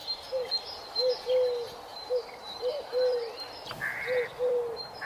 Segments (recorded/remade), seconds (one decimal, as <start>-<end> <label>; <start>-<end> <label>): 0.0-1.9 recorded; 1.9-4.6 remade; 4.6-5.1 recorded